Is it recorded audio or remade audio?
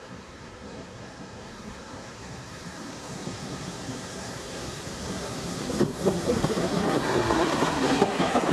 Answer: remade